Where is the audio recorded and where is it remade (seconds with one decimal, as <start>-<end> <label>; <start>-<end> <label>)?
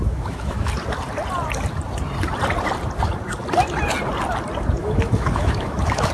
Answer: 0.0-0.7 remade; 0.7-4.8 recorded; 4.8-6.1 remade